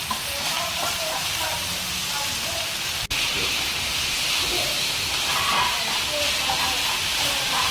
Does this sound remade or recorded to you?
remade